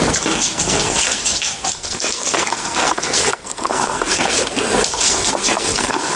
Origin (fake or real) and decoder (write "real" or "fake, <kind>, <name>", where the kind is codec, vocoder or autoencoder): fake, codec, SNAC